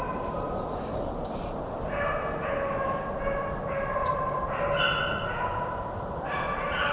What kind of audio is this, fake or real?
real